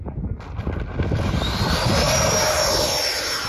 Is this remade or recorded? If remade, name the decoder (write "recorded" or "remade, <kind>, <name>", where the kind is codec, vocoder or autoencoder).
recorded